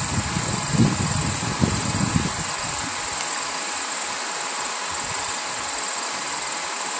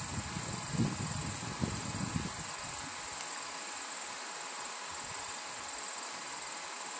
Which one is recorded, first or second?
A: second